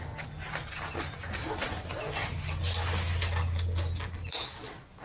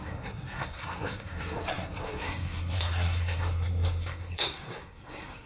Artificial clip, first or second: second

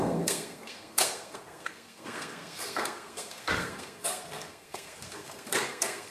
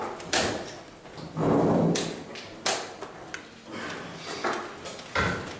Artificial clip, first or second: first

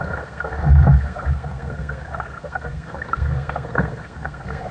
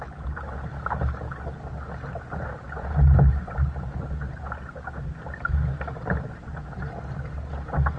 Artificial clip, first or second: first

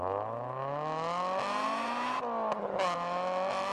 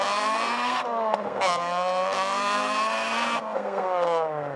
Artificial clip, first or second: second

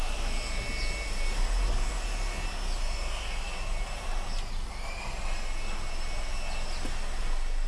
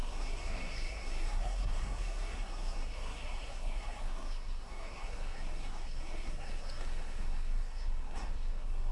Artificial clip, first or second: second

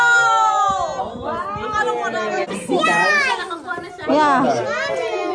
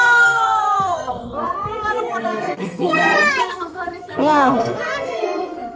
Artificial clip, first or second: second